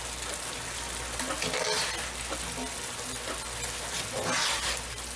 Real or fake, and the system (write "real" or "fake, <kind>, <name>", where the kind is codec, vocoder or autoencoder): real